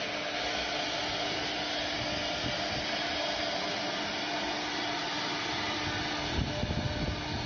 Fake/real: real